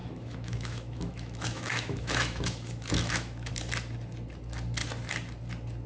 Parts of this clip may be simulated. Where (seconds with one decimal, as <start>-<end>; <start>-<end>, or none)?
0.0-3.5

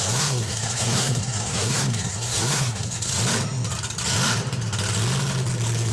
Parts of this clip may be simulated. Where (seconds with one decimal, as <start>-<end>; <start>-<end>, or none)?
0.0-3.1

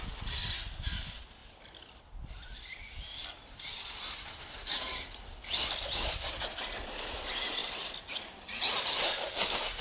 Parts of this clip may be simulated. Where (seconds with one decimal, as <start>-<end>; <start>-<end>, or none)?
1.4-6.6; 7.6-8.1

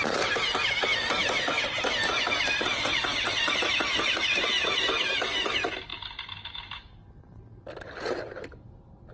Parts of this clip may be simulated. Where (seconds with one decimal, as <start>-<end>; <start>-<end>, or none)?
none

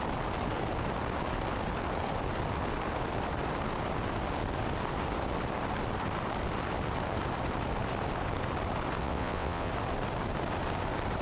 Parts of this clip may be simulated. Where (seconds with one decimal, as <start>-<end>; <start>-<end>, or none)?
9.0-9.7

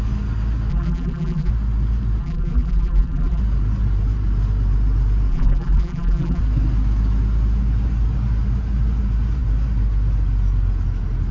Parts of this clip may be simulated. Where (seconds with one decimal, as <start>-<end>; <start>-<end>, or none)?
0.7-1.5; 2.2-3.4; 5.3-6.4

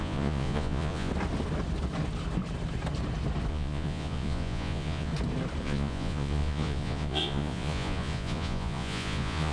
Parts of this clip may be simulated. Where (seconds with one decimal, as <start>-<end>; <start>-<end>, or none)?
0.0-1.1; 3.5-5.1; 5.6-9.5